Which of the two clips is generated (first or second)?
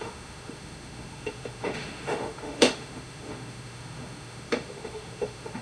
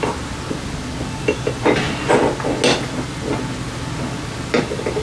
first